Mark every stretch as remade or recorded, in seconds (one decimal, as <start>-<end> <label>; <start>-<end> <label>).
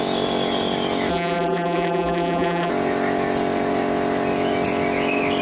0.0-1.1 recorded; 1.1-2.7 remade; 2.7-5.4 recorded